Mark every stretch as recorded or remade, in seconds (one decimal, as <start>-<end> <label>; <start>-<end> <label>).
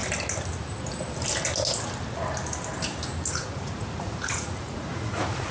0.0-3.3 recorded; 3.3-5.5 remade